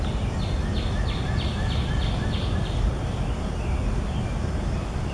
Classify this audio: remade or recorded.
recorded